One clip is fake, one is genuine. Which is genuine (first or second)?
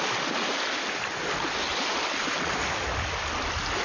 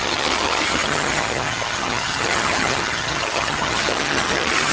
first